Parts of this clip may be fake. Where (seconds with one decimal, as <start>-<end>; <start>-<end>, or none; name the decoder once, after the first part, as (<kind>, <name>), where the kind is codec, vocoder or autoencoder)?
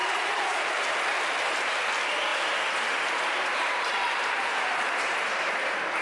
0.0-0.7 (vocoder, BigVGAN v2); 2.3-6.0